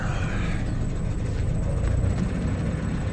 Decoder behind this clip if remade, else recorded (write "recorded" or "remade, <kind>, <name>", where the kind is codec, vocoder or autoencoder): recorded